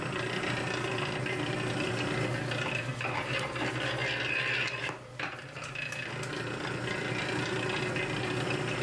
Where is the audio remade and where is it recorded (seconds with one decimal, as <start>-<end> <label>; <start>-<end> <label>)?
0.0-8.8 recorded